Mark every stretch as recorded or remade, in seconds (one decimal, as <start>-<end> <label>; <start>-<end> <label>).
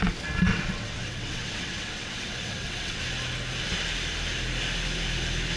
0.0-0.5 recorded; 0.5-3.0 remade; 3.0-5.6 recorded